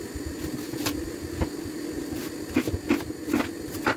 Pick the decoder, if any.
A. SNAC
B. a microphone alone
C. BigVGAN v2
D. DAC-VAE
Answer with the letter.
B